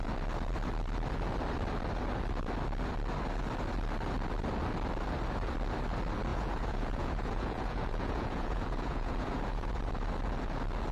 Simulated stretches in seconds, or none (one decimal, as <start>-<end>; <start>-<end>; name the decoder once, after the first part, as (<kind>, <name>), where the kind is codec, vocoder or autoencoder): 6.3-9.9 (vocoder, Vocos)